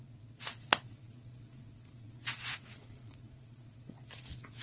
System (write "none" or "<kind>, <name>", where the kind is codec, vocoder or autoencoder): vocoder, Vocos